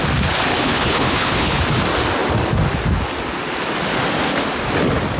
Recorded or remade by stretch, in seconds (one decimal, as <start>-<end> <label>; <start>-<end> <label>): 0.0-0.5 recorded; 0.5-1.6 remade; 1.6-5.2 recorded